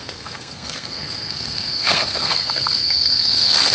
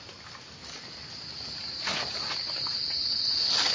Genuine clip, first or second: second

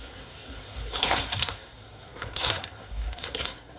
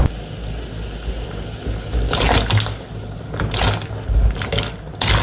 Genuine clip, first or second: second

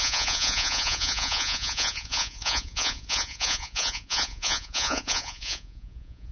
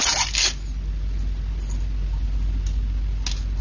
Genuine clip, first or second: second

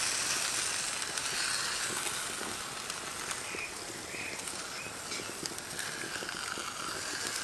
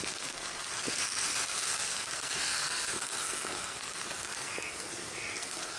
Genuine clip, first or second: first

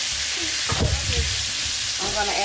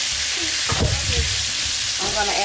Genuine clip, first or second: first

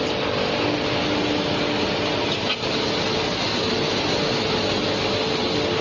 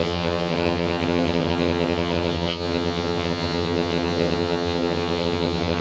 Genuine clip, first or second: first